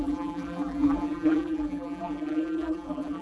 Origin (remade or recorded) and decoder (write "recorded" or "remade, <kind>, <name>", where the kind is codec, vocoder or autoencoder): remade, vocoder, BigVGAN v2